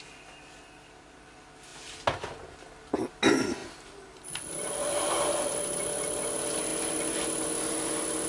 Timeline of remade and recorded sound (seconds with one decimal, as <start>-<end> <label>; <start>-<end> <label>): 0.0-8.3 recorded

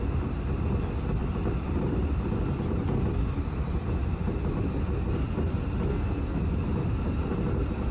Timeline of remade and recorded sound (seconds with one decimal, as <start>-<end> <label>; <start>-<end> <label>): 0.0-5.9 recorded; 5.9-6.4 remade; 6.4-7.9 recorded

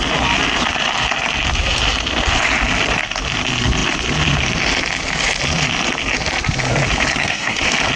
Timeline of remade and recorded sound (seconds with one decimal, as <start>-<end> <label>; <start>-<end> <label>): 0.0-7.1 recorded; 7.1-7.6 remade; 7.6-8.0 recorded